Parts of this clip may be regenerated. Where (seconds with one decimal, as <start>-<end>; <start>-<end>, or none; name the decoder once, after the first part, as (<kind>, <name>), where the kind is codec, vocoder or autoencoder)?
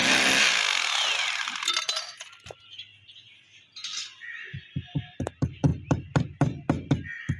none